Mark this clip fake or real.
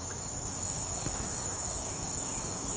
fake